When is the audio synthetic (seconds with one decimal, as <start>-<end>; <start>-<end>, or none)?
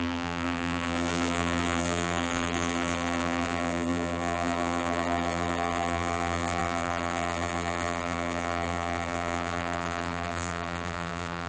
0.0-11.5